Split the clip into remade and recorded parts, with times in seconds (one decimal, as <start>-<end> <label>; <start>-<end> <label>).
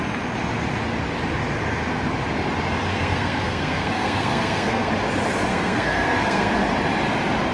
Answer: 0.0-2.9 recorded; 2.9-4.9 remade; 4.9-5.5 recorded; 5.5-6.5 remade; 6.5-7.5 recorded